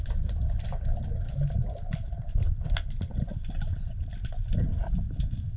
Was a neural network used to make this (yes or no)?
no